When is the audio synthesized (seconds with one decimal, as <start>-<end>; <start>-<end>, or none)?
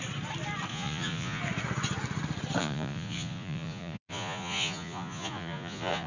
0.7-1.4; 2.6-6.1